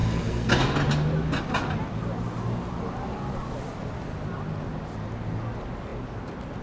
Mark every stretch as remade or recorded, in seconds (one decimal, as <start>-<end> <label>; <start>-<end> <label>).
0.0-0.5 remade; 0.5-6.6 recorded